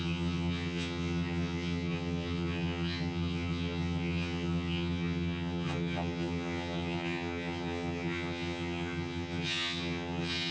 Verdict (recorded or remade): remade